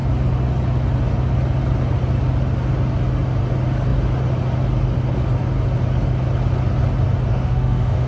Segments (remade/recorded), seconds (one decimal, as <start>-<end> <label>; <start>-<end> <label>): 0.0-7.3 recorded; 7.3-8.1 remade